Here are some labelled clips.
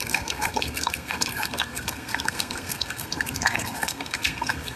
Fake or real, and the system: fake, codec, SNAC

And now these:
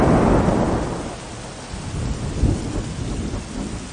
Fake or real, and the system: real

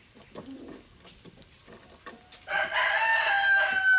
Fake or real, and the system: real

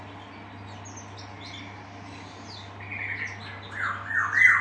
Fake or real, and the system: real